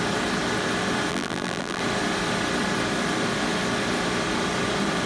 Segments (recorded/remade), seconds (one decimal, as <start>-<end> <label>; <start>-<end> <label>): 0.0-1.1 recorded; 1.1-1.8 remade; 1.8-5.1 recorded